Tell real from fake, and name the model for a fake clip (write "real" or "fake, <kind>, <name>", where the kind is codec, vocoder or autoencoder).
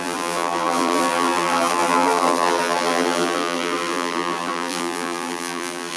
fake, vocoder, BigVGAN v2